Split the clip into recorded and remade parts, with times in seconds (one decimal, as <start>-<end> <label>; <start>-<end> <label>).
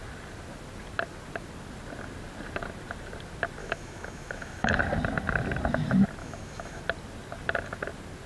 0.0-3.6 recorded; 3.6-4.7 remade; 4.7-6.2 recorded; 6.2-6.8 remade; 6.8-8.3 recorded